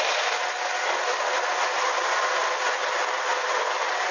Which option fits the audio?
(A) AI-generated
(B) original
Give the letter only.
B